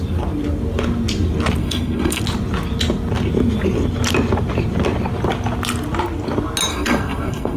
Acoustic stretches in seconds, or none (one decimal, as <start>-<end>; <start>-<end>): 0.0-1.6; 2.2-6.7